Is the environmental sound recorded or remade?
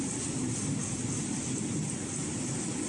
recorded